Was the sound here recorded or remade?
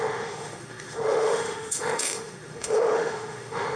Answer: remade